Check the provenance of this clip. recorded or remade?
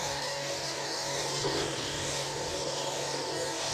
remade